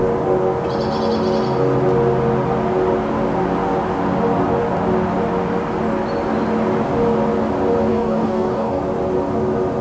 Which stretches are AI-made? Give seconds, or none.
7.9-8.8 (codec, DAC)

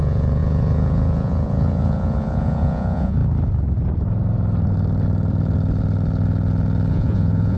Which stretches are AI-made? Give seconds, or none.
0.0-3.2 (vocoder, Vocos); 6.9-7.6

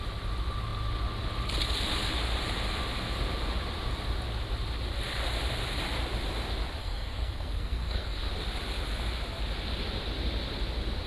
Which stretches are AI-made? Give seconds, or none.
6.8-8.3 (codec, SNAC)

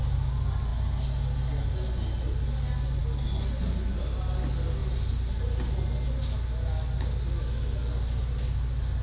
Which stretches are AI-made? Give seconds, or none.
none